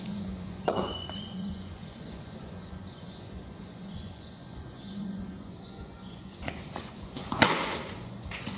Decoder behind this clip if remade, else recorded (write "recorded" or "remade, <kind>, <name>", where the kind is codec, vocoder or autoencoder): remade, vocoder, Vocos